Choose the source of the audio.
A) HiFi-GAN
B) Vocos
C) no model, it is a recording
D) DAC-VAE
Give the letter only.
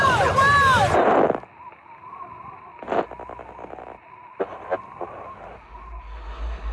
C